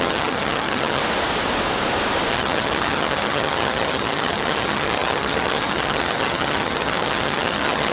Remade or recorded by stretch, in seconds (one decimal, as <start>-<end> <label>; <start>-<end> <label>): 0.0-1.0 remade; 1.0-2.3 recorded; 2.3-7.9 remade